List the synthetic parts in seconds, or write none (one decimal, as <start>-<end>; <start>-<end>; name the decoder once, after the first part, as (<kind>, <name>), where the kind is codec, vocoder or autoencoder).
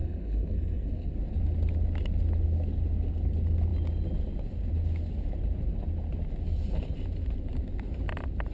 0.0-1.1 (codec, SNAC)